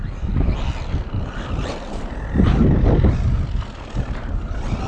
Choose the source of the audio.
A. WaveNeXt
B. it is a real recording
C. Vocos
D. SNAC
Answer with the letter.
B